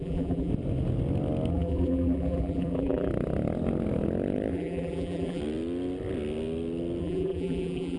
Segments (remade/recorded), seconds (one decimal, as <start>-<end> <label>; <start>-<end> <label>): 0.0-0.5 remade; 0.5-1.5 recorded; 1.5-3.1 remade; 3.1-4.5 recorded; 4.5-5.4 remade; 5.4-7.0 recorded; 7.0-8.0 remade

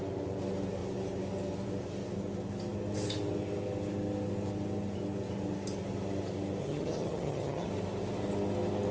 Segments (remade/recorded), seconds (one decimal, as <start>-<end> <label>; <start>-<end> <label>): 0.0-6.6 recorded; 6.6-7.7 remade; 7.7-8.9 recorded

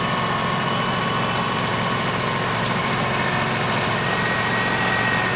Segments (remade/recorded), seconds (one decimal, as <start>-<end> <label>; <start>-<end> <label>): 0.0-5.4 recorded

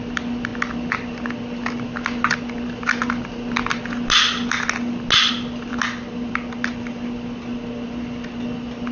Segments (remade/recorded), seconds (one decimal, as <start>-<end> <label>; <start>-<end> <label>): 0.0-8.9 recorded

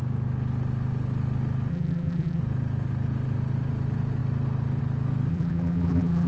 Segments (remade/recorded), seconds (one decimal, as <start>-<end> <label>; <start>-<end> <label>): 0.0-1.7 recorded; 1.7-2.4 remade; 2.4-5.3 recorded; 5.3-6.3 remade

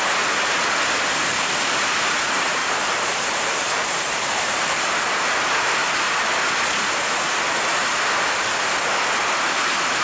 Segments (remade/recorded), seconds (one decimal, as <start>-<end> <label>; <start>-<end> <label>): 0.0-2.6 recorded; 2.6-5.2 remade; 5.2-10.0 recorded

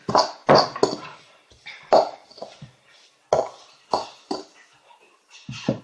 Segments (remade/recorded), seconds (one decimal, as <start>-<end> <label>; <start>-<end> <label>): 0.0-5.8 recorded

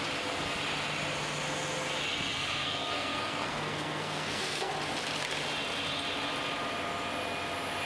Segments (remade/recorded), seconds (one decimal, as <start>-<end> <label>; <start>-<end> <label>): 0.0-2.4 recorded; 2.4-4.7 remade; 4.7-7.9 recorded